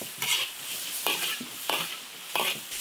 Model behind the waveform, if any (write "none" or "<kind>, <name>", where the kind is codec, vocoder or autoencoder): none